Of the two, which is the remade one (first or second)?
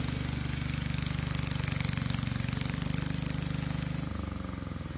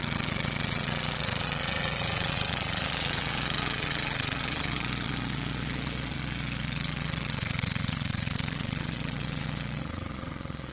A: second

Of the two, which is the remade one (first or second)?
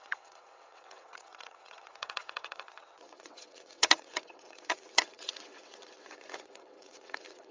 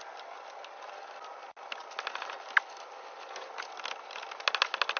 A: first